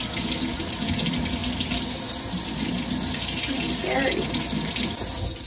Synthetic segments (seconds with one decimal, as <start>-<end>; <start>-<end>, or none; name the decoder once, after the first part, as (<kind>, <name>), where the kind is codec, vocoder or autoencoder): none